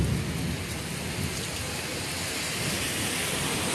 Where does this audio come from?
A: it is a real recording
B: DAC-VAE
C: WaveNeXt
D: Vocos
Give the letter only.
A